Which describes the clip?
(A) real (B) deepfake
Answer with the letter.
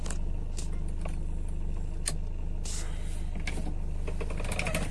A